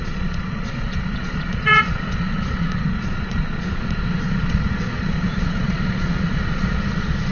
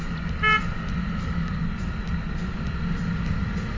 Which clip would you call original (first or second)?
second